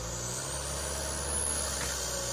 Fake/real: real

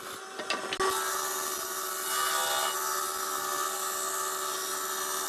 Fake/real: real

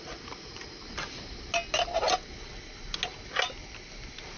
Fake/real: real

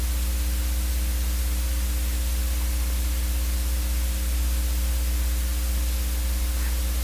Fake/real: real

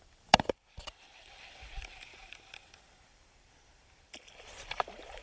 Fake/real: fake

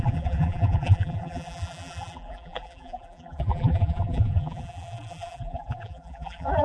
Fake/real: fake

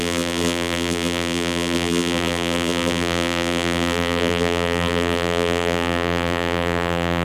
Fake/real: fake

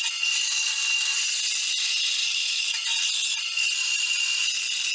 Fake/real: real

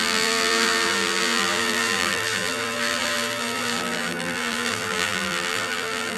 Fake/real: fake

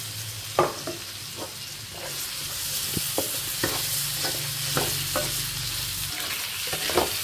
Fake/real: real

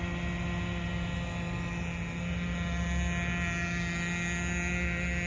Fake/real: real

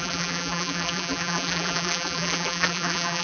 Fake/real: fake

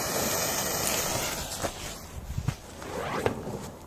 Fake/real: real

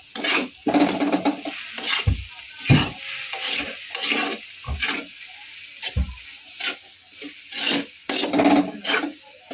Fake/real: real